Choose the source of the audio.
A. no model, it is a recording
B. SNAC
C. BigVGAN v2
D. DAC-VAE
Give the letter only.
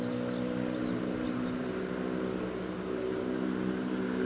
A